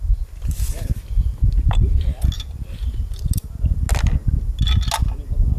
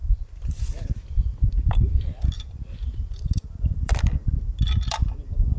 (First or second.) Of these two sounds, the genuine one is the first